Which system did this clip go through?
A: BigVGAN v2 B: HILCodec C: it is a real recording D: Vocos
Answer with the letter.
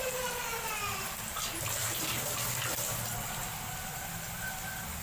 C